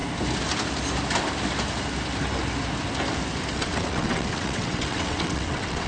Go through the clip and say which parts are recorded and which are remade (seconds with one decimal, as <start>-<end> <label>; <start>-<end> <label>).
0.0-3.5 recorded; 3.5-5.9 remade